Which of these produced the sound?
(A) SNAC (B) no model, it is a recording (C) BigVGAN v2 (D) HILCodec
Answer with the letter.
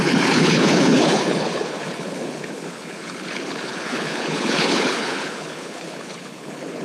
D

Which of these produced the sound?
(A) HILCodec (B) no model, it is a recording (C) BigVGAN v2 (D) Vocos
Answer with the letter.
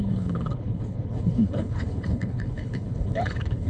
A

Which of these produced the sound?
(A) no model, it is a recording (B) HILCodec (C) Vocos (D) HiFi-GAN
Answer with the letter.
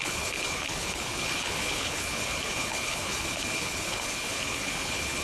B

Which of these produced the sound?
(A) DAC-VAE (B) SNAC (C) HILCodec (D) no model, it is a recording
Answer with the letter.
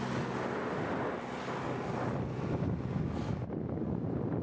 D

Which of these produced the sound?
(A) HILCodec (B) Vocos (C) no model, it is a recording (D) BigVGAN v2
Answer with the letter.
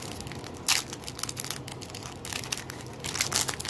C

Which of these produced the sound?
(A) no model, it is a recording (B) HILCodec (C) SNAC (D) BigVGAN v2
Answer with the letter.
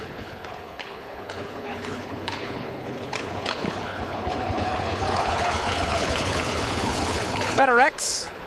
B